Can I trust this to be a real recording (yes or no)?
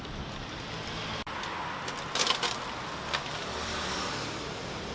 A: yes